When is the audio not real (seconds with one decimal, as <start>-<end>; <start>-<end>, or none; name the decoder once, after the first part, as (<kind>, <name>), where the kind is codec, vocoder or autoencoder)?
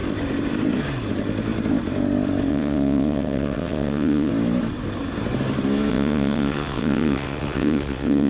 2.5-4.3 (vocoder, WaveNeXt); 5.9-8.3